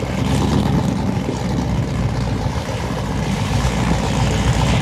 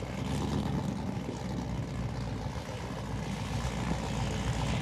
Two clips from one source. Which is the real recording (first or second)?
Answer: second